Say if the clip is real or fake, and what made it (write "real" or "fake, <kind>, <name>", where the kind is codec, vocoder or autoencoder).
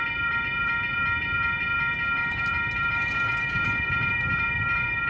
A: fake, vocoder, BigVGAN v2